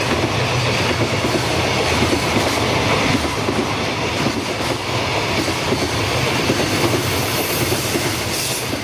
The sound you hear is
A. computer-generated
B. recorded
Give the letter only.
B